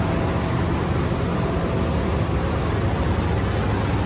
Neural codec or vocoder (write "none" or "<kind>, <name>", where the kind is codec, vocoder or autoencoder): none